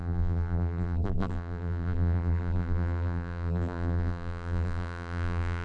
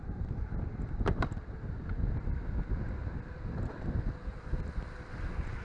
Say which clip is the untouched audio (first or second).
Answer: second